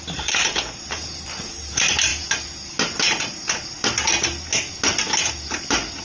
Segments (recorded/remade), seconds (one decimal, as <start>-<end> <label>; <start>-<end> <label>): 0.0-2.1 remade; 2.1-6.0 recorded